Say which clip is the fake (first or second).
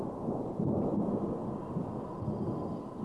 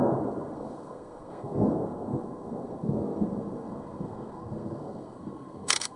second